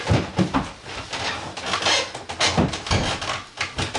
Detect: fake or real real